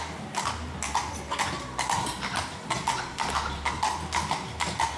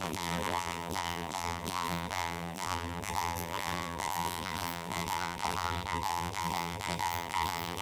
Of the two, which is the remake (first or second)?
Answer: second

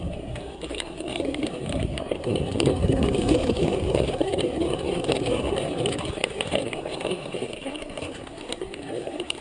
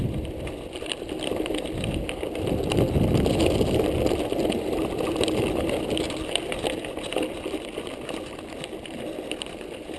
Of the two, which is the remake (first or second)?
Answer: first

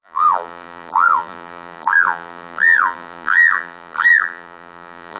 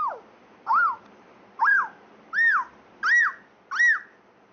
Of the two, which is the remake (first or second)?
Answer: first